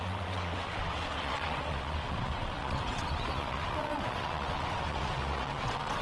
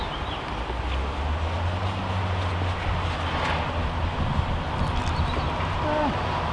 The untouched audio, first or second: second